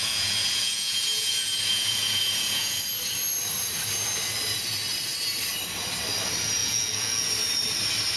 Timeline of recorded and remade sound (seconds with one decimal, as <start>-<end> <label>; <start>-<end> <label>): 0.0-2.8 remade; 2.8-6.6 recorded; 6.6-7.3 remade; 7.3-8.2 recorded